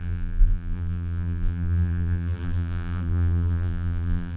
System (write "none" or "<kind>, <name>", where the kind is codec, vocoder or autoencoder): vocoder, BigVGAN v2